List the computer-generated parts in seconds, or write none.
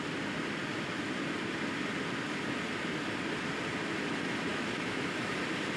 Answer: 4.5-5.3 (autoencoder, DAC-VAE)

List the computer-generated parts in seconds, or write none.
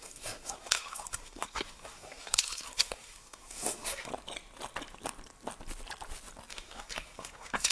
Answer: 0.0-4.1 (codec, SNAC); 6.5-7.7